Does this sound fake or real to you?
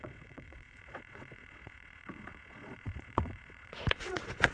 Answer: fake